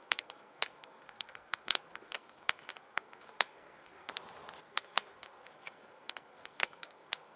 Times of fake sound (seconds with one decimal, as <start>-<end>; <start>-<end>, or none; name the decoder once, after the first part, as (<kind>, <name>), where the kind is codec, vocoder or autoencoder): 0.0-4.1 (codec, SNAC); 4.6-7.4